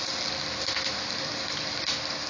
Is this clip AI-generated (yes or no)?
no